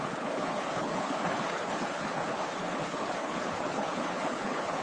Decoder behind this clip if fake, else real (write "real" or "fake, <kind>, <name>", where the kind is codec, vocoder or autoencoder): fake, codec, HILCodec